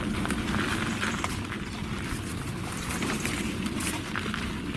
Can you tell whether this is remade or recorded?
recorded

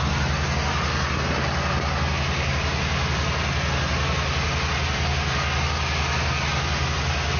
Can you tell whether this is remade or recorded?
recorded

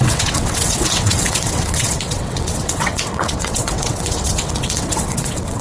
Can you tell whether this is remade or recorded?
remade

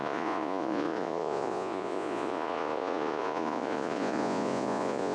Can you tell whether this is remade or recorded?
remade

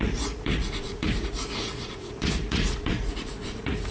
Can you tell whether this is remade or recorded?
remade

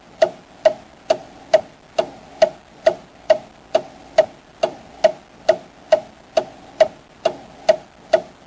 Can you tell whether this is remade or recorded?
recorded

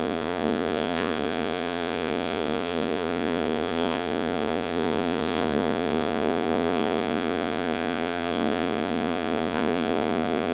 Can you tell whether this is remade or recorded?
remade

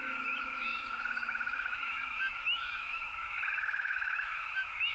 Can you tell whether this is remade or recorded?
remade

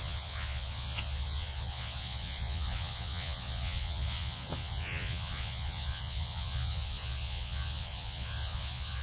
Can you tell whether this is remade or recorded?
remade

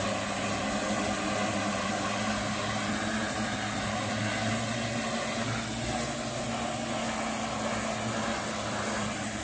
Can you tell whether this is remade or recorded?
recorded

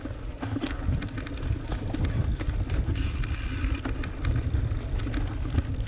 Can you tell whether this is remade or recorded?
recorded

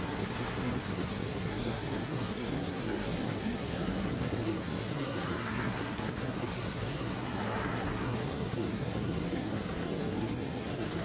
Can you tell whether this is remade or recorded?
remade